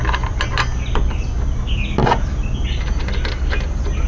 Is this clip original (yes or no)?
yes